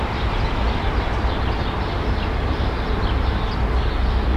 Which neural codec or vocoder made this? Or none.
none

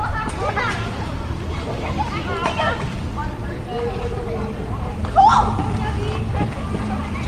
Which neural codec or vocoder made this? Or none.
none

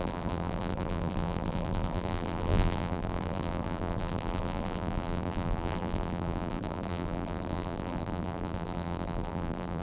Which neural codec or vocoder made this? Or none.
vocoder, BigVGAN v2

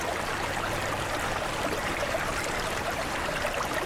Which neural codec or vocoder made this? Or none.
vocoder, BigVGAN v2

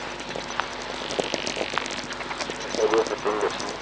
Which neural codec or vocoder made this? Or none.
none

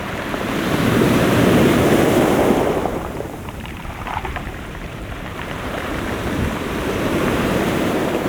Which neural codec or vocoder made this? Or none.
vocoder, BigVGAN v2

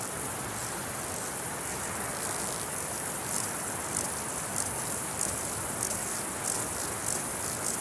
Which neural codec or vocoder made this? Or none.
vocoder, BigVGAN v2